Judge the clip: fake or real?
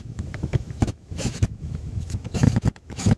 fake